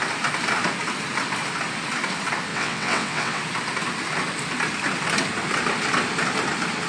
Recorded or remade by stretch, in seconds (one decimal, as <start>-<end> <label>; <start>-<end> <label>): 0.0-2.5 recorded; 2.5-3.4 remade; 3.4-6.9 recorded